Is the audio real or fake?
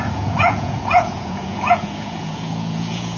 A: fake